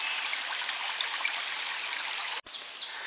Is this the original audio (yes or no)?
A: yes